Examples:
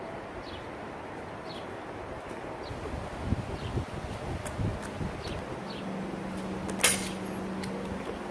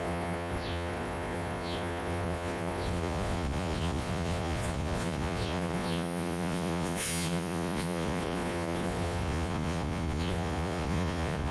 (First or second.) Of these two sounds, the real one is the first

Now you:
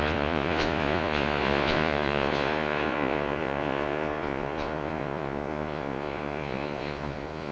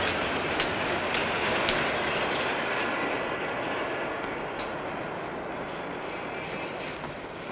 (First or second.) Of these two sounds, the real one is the second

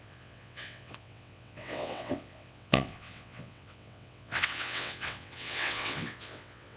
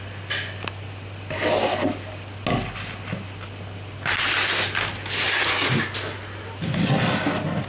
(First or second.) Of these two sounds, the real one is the second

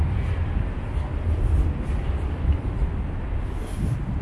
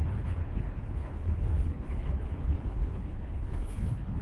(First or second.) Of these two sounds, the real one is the first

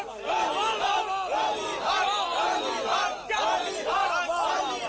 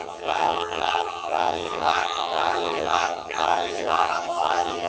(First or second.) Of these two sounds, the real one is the first